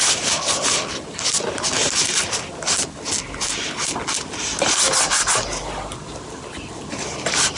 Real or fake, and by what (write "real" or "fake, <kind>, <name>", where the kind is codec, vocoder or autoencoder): real